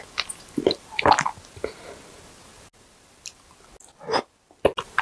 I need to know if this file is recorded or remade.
recorded